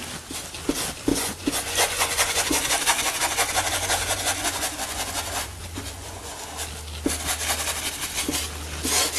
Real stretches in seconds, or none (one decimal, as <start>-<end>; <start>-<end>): 0.0-1.1; 6.4-9.2